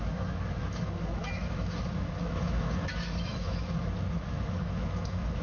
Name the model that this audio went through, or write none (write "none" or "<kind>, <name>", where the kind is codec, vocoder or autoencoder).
autoencoder, DAC-VAE